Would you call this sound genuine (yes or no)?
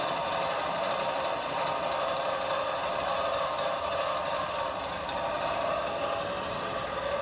yes